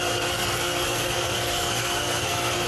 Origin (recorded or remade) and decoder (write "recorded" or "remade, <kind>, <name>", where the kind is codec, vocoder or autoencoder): remade, codec, SNAC